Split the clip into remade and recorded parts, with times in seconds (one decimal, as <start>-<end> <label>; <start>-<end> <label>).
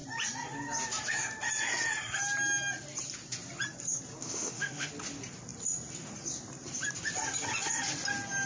0.0-4.2 recorded; 4.2-4.9 remade; 4.9-8.5 recorded